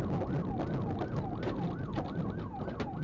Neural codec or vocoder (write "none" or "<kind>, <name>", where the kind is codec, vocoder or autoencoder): none